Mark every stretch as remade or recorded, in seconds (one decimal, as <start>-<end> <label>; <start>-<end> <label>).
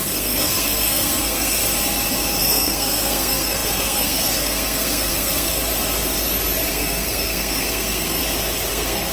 0.0-1.6 remade; 1.6-2.4 recorded; 2.4-5.7 remade; 5.7-6.7 recorded; 6.7-8.2 remade; 8.2-8.7 recorded; 8.7-9.1 remade